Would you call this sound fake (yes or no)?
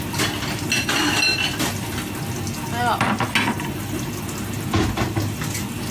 no